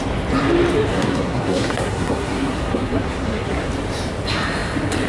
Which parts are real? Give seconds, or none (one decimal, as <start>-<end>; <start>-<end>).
0.0-0.9; 3.7-5.1